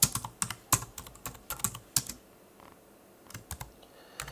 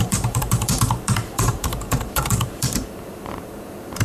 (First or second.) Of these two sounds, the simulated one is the second